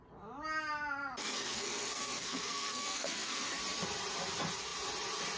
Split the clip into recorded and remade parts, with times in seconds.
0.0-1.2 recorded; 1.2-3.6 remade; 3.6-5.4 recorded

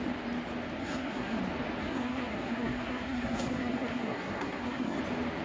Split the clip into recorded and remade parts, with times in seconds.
0.0-0.8 recorded; 0.8-1.4 remade; 1.4-1.8 recorded; 1.8-5.0 remade; 5.0-5.4 recorded